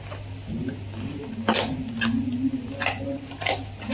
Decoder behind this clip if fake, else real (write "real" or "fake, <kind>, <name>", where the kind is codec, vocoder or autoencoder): real